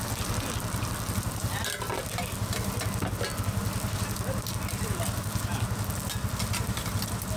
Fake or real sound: real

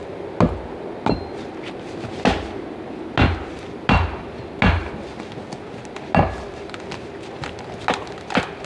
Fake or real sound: real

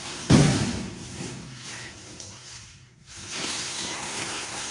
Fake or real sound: fake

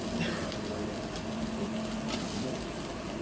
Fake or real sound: real